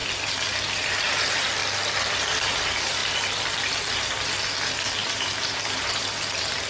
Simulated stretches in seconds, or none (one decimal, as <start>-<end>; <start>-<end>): 5.0-6.0